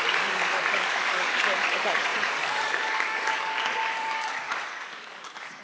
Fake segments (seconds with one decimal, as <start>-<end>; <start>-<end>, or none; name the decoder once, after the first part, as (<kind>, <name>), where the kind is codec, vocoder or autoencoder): 0.0-5.6 (codec, DAC)